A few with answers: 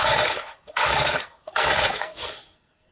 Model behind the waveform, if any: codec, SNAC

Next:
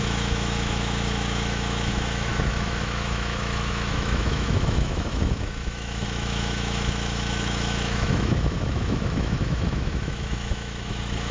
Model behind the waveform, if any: autoencoder, DAC-VAE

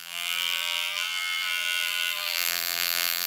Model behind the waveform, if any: vocoder, BigVGAN v2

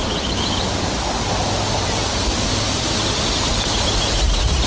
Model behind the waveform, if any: none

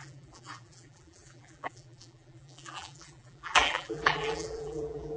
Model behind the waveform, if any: vocoder, BigVGAN v2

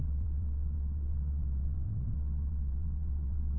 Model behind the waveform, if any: vocoder, WaveNeXt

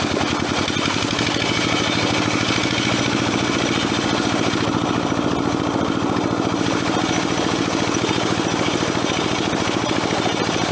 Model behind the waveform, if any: none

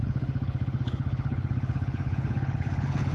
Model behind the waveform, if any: codec, HILCodec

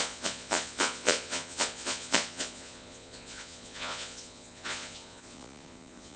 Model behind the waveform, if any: vocoder, Vocos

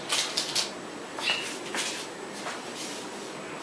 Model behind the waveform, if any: none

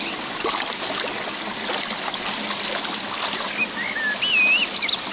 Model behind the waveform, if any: none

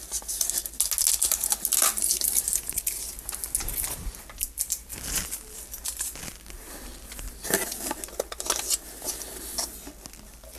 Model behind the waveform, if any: none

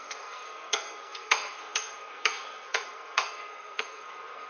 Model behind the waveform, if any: codec, SNAC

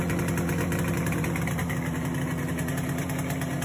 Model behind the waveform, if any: none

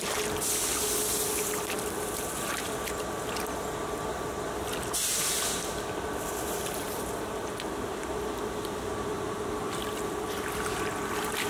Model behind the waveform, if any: none